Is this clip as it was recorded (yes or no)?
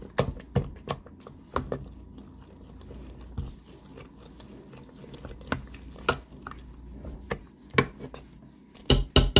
yes